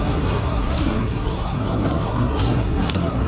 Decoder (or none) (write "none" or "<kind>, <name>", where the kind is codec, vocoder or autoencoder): codec, SNAC